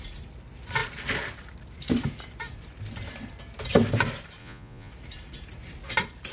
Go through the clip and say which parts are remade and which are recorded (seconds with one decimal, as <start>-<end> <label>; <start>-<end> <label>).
0.0-4.4 recorded; 4.4-4.9 remade; 4.9-6.3 recorded